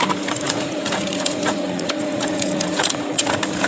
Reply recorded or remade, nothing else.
remade